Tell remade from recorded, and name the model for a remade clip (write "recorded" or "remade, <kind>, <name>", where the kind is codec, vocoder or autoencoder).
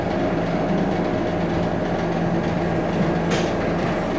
recorded